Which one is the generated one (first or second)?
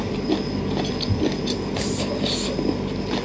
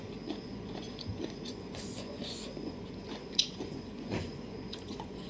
second